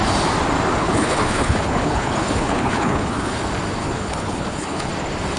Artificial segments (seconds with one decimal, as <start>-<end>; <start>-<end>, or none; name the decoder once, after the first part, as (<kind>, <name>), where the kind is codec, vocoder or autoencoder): 0.8-3.4 (codec, HILCodec); 3.8-4.9